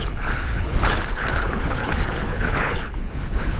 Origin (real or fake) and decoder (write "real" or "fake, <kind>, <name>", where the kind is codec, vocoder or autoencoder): fake, codec, HILCodec